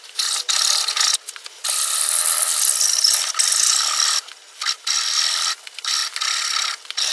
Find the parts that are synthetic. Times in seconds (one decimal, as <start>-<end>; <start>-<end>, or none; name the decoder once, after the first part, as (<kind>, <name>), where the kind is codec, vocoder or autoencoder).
0.0-1.1 (vocoder, BigVGAN v2); 5.3-6.0